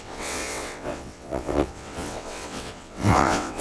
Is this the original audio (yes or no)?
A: no